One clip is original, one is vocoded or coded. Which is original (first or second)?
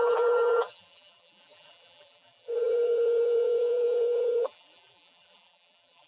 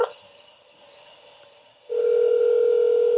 second